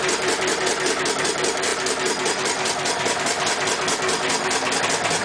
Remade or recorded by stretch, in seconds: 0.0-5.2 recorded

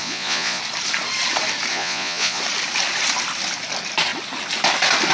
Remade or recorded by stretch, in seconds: 0.0-0.6 remade; 0.6-1.7 recorded; 1.7-2.4 remade; 2.4-5.1 recorded

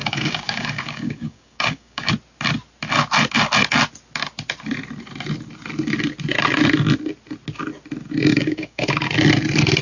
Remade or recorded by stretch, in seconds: 0.0-2.1 remade; 2.1-8.3 recorded; 8.3-8.9 remade; 8.9-9.8 recorded